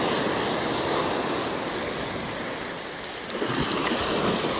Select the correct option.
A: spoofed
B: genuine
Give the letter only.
B